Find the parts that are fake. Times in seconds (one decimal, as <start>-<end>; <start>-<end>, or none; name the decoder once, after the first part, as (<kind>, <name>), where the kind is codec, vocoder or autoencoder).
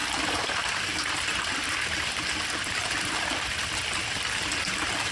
0.0-5.1 (vocoder, BigVGAN v2)